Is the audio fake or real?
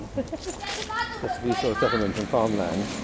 real